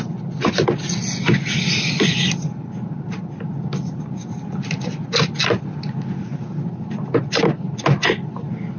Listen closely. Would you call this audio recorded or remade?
recorded